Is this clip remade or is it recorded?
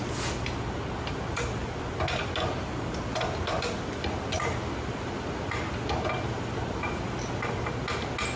recorded